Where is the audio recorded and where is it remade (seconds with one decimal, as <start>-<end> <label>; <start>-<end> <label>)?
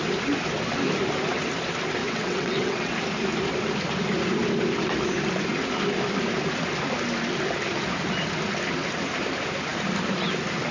0.0-2.0 recorded; 2.0-2.9 remade; 2.9-10.7 recorded